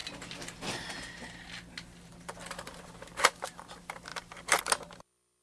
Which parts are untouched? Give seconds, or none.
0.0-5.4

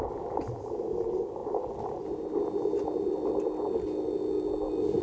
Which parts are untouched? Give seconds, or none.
0.0-5.0

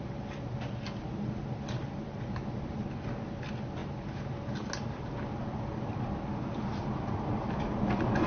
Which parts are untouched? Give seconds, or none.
0.0-8.3

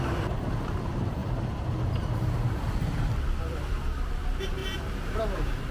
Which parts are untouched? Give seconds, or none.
1.2-2.2; 2.8-4.1